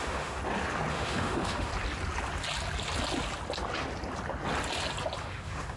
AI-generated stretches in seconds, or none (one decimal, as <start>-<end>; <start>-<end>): 0.0-0.4; 0.9-1.7; 5.2-5.8